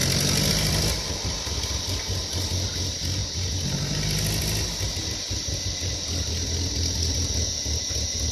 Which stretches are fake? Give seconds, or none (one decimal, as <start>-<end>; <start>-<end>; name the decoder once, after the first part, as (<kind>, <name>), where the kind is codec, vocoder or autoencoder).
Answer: none